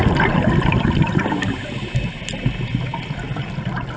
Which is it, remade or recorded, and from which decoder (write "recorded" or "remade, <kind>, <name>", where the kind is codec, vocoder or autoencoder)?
recorded